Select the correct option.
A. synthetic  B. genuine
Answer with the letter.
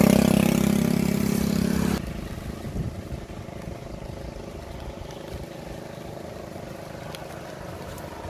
B